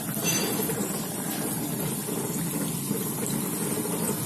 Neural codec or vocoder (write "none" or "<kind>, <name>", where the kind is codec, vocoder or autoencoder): none